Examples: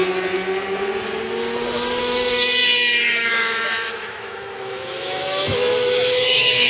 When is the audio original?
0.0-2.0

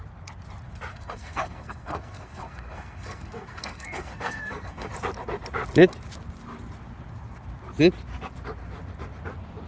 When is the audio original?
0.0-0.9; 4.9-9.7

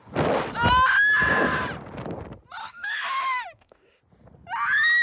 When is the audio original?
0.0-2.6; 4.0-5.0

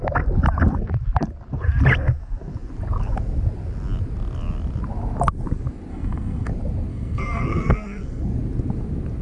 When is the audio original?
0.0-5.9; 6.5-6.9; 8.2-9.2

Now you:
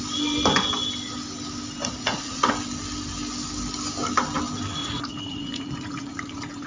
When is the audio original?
0.0-1.8; 2.5-4.8